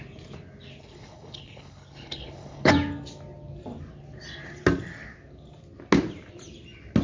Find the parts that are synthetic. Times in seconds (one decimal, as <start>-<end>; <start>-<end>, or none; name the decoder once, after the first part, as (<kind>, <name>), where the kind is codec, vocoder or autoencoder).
0.8-2.7 (codec, HILCodec)